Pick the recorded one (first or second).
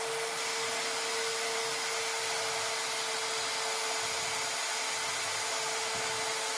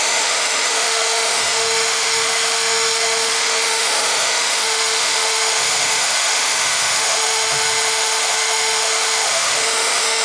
first